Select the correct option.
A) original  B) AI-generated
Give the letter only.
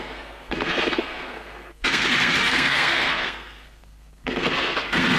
B